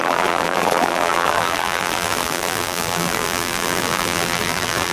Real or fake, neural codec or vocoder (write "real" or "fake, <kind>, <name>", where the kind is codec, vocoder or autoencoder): fake, vocoder, BigVGAN v2